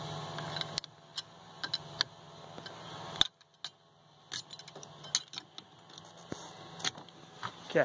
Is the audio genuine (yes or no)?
yes